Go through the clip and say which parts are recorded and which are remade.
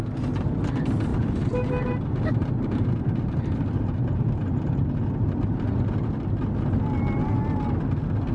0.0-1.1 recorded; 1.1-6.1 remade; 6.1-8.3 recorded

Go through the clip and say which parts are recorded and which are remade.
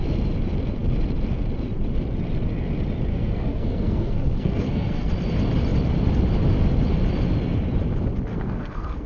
0.0-3.1 recorded; 3.1-5.1 remade; 5.1-8.3 recorded; 8.3-9.1 remade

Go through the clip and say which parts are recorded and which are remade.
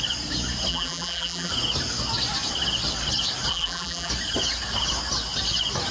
0.0-0.7 recorded; 0.7-1.5 remade; 1.5-3.5 recorded; 3.5-4.1 remade; 4.1-5.9 recorded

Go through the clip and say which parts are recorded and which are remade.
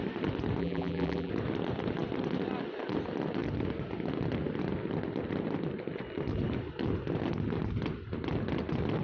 0.0-0.6 recorded; 0.6-1.3 remade; 1.3-9.0 recorded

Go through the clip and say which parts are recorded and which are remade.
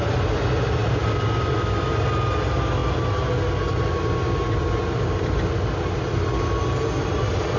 0.0-7.6 recorded